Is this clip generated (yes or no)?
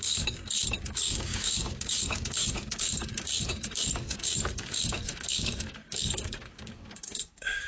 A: yes